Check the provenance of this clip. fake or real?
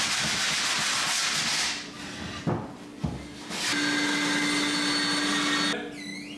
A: real